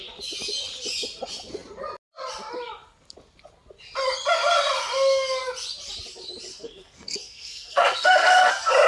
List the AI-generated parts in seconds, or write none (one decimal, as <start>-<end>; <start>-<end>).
6.5-8.5